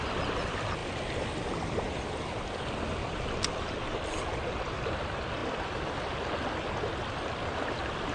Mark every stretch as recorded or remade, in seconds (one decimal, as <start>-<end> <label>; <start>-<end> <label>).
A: 0.0-8.1 recorded